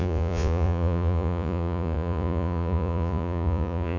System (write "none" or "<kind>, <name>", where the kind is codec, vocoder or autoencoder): vocoder, Vocos